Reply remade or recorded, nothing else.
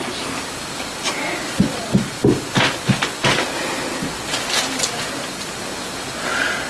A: recorded